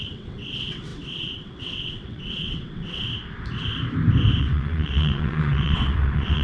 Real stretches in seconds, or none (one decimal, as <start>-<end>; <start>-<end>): 3.1-4.4